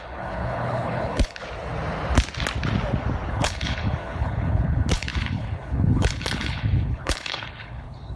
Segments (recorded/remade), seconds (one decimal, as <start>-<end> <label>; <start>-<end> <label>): 0.0-1.4 remade; 1.4-3.3 recorded; 3.3-8.2 remade